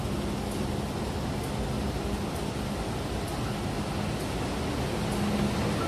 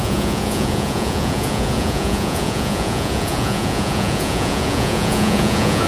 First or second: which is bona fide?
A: first